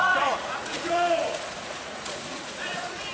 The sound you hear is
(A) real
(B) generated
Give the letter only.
B